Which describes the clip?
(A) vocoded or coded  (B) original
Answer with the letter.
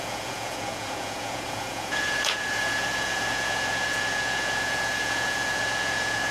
A